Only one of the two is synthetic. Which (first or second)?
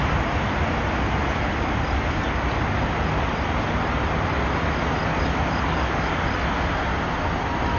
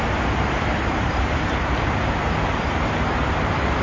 second